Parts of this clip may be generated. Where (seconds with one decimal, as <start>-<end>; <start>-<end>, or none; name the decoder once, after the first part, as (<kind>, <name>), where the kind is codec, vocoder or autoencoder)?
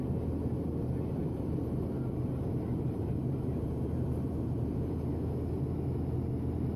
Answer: 1.2-1.9 (vocoder, BigVGAN v2); 2.7-5.1